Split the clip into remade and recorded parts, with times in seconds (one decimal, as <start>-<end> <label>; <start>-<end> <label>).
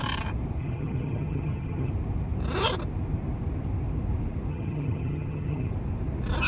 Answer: 0.0-0.6 recorded; 0.6-1.9 remade; 1.9-4.5 recorded; 4.5-5.7 remade; 5.7-6.5 recorded